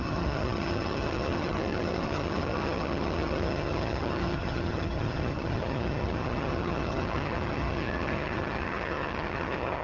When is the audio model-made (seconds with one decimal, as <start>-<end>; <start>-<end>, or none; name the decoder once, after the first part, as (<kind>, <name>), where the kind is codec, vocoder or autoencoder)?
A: 0.0-9.8 (vocoder, HiFi-GAN)